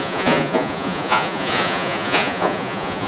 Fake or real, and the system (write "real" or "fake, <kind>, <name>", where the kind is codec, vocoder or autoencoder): fake, vocoder, Vocos